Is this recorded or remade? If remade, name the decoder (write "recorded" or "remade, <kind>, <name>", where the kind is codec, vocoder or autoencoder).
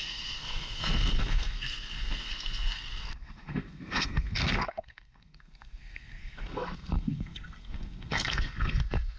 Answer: remade, codec, SNAC